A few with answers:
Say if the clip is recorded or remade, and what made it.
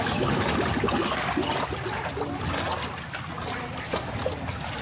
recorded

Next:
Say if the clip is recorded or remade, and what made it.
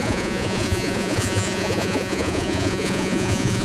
remade, vocoder, Vocos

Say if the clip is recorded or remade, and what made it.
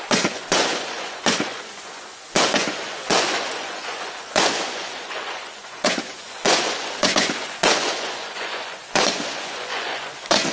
remade, vocoder, Vocos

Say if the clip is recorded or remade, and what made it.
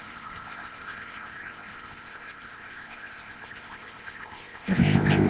remade, codec, ZipCodec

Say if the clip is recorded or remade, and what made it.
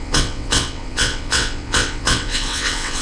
remade, vocoder, WaveNeXt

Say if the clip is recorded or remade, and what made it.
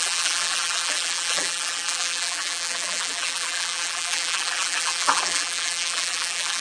remade, vocoder, BigVGAN v2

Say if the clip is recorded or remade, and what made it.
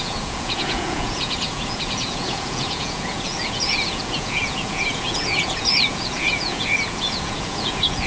remade, vocoder, Vocos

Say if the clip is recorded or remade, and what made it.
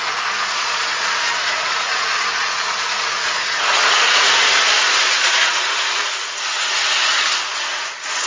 remade, vocoder, Vocos